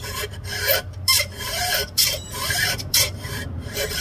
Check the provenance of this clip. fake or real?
fake